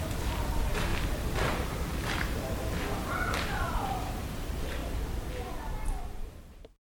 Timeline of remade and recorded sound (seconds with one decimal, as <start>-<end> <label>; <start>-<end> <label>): 0.0-1.9 remade; 1.9-3.1 recorded; 3.1-4.8 remade; 4.8-6.0 recorded; 6.0-6.8 remade